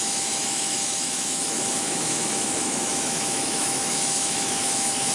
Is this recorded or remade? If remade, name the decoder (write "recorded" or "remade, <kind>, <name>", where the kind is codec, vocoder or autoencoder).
remade, autoencoder, DAC-VAE